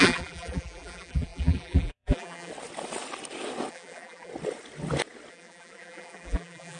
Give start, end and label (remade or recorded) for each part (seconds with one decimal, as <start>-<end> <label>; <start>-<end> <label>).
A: 0.0-2.5 remade; 2.5-3.7 recorded; 3.7-4.3 remade; 4.3-5.3 recorded; 5.3-6.8 remade